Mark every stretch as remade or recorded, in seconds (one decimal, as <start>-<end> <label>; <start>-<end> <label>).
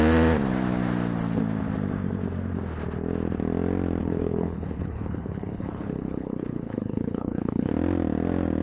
0.0-4.0 recorded; 4.0-7.7 remade; 7.7-8.6 recorded